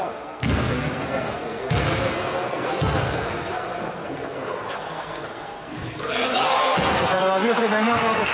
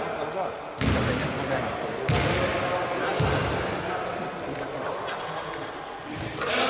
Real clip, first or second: second